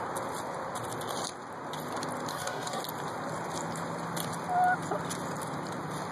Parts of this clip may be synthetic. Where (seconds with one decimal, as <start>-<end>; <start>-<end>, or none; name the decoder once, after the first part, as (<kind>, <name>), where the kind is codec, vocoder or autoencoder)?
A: 2.3-2.8 (codec, SNAC)